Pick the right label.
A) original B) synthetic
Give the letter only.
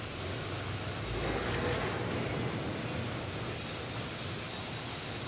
A